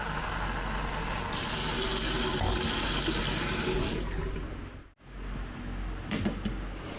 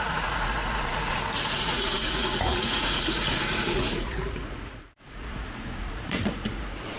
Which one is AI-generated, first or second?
second